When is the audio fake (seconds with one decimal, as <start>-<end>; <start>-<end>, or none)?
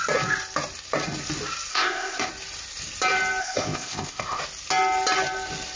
1.7-2.3; 3.4-4.4